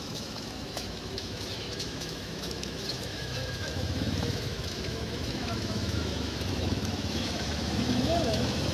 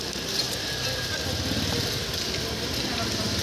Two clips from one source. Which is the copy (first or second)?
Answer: first